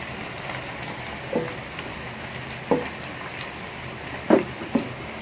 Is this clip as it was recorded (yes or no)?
yes